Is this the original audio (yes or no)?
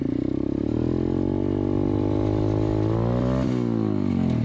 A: yes